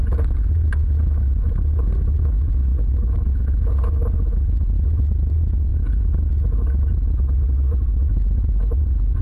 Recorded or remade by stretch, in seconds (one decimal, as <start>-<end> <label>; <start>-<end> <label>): 0.0-9.2 recorded